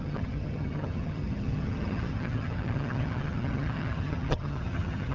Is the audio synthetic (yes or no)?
yes